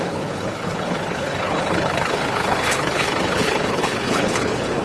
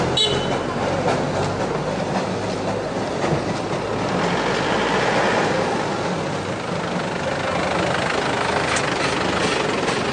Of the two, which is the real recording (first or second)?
second